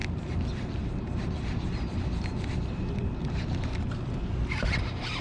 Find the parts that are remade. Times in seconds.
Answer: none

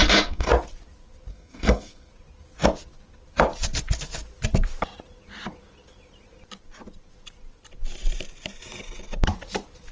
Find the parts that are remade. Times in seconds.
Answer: 0.0-0.5 (codec, SNAC); 1.3-2.1

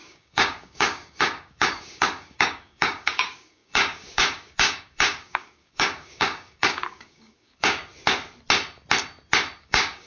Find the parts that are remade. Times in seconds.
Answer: 0.0-7.8 (codec, DAC); 9.6-10.1

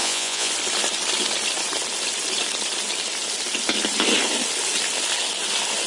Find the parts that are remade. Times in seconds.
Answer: 0.0-0.5 (vocoder, Vocos)

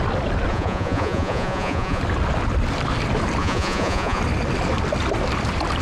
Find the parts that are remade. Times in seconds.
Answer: 0.5-2.0 (vocoder, Vocos); 3.4-4.2